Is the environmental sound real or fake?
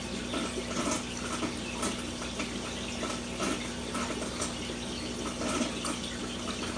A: real